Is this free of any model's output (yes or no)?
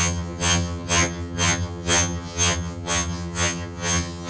no